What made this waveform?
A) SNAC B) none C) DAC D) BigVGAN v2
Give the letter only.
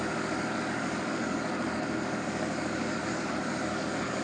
C